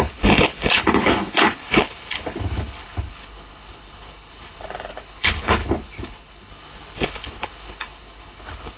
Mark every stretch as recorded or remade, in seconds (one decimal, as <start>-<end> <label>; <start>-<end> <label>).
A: 0.0-8.8 remade